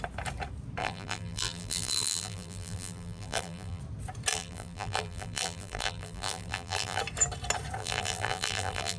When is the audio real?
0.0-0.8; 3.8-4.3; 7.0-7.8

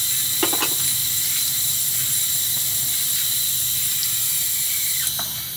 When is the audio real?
0.0-1.0; 3.5-5.6

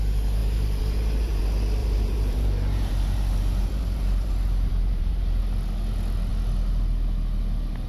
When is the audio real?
0.0-0.4; 1.4-1.8; 5.4-7.9

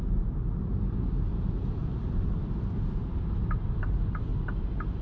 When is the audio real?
4.3-5.0

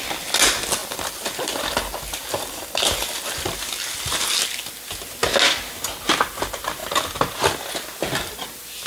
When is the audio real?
0.0-0.8; 3.5-6.8; 7.3-8.9

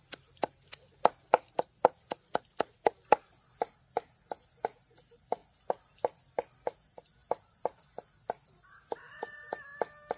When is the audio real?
0.0-5.4; 6.6-10.2

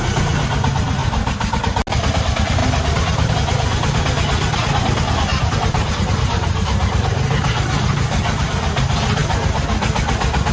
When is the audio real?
0.0-1.0; 1.6-5.3; 8.5-10.5

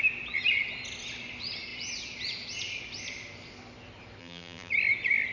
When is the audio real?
0.0-4.2; 4.7-5.3